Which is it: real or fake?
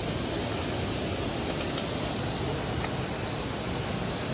real